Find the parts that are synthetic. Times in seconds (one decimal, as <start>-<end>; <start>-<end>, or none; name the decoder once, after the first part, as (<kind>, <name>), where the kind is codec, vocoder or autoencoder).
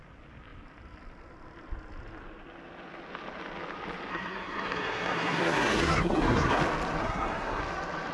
4.1-6.6 (codec, SNAC); 7.0-7.6